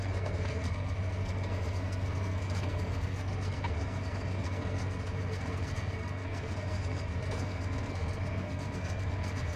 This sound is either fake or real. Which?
fake